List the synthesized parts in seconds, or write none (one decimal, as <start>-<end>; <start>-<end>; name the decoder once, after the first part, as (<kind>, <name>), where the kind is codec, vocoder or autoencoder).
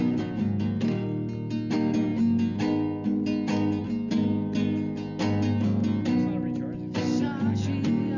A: none